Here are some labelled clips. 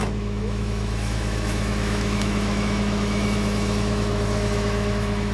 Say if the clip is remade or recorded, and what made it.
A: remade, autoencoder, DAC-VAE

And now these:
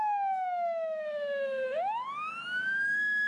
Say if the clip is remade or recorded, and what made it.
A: remade, autoencoder, DAC-VAE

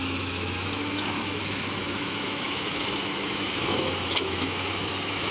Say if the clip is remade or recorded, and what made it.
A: remade, autoencoder, DAC-VAE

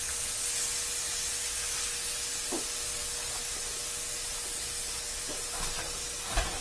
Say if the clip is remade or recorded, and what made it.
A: recorded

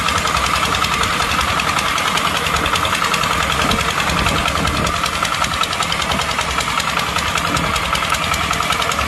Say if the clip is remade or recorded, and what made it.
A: recorded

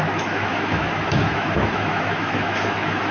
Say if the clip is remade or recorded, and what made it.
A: remade, autoencoder, DAC-VAE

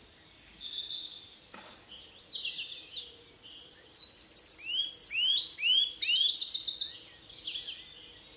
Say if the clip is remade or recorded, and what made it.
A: recorded